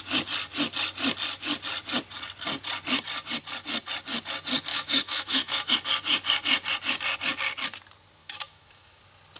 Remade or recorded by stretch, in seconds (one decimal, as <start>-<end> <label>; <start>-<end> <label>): 0.0-4.7 recorded; 4.7-5.7 remade; 5.7-8.2 recorded; 8.2-9.0 remade; 9.0-9.4 recorded